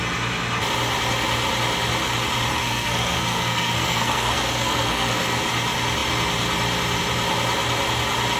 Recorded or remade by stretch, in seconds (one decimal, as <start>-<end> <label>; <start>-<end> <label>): 0.0-2.5 recorded; 2.5-5.4 remade; 5.4-8.4 recorded